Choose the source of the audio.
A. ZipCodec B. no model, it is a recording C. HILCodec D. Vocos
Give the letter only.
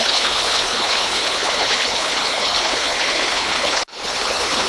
C